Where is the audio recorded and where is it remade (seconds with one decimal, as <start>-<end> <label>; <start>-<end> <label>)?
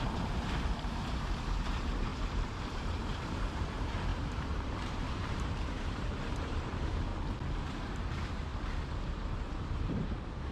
0.0-7.1 remade; 7.1-7.8 recorded; 7.8-8.5 remade; 8.5-9.1 recorded; 9.1-10.5 remade